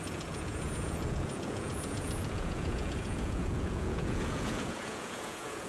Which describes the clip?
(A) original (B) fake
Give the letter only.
B